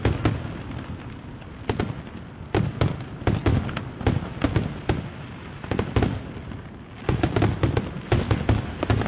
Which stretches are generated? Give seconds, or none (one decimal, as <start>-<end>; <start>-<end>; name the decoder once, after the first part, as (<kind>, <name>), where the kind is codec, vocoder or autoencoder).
none